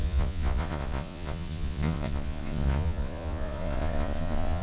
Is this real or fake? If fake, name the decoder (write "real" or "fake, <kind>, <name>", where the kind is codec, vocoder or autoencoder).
fake, vocoder, Vocos